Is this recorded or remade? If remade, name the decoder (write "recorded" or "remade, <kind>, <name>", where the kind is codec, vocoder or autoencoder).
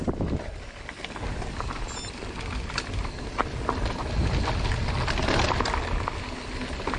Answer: recorded